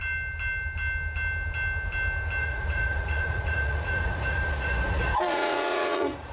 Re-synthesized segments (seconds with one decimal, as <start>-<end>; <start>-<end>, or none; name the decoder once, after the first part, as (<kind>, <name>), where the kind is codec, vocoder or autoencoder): 2.4-6.3 (vocoder, Vocos)

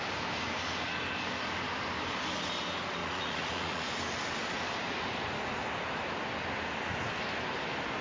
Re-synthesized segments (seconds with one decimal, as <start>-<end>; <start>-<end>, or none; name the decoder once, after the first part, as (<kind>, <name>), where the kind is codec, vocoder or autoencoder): 3.0-3.9 (vocoder, Vocos)

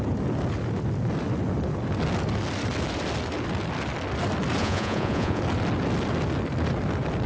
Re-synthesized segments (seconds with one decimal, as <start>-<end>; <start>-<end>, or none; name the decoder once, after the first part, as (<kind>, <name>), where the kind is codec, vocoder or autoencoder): 4.6-5.4 (vocoder, Vocos)

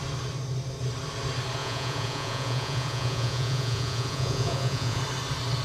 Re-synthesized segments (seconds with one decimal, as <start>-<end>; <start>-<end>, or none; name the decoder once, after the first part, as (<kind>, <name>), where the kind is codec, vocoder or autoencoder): 1.6-5.0 (vocoder, Vocos)

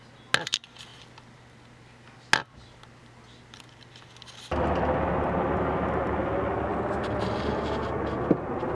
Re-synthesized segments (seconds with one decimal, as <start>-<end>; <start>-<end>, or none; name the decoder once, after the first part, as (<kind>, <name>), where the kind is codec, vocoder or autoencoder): none

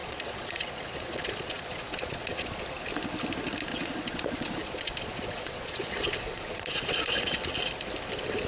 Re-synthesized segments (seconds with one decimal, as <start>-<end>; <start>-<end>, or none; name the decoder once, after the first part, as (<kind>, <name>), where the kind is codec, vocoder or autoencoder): 0.0-2.6 (vocoder, Vocos); 3.7-7.4